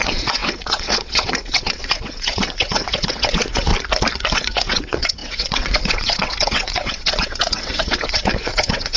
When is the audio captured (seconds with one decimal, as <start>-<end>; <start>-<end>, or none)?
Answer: 3.7-4.3